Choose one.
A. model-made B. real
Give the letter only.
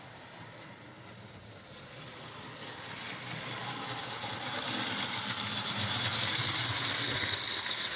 B